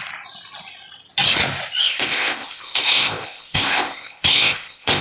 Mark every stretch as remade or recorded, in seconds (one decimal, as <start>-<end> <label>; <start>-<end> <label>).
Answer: 0.0-1.8 recorded; 1.8-5.0 remade